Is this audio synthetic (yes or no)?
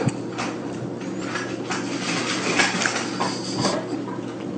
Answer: no